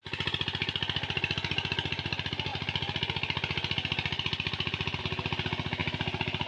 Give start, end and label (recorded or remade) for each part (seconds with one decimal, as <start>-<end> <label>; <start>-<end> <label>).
0.0-6.5 recorded